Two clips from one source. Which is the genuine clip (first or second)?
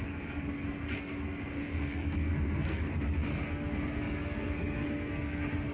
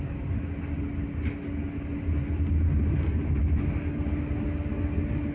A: second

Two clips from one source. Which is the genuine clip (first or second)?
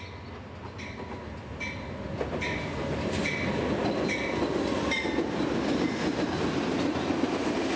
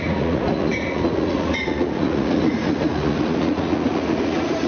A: first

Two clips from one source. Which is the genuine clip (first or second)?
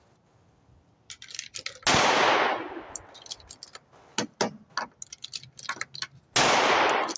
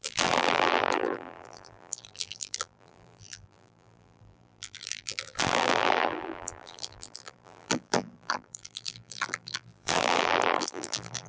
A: first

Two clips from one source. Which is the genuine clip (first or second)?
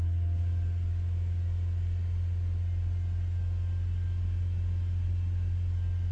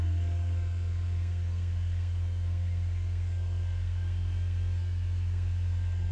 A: first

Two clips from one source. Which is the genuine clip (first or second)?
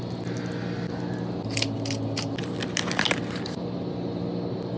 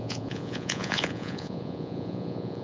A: first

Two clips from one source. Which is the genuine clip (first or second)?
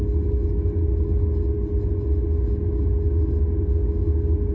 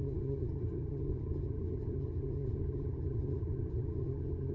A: first